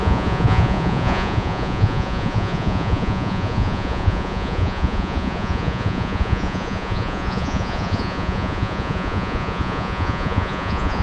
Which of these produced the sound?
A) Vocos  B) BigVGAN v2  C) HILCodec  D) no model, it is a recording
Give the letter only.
A